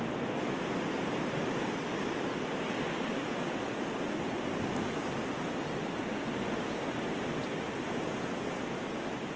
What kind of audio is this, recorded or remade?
recorded